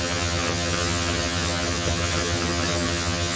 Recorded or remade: remade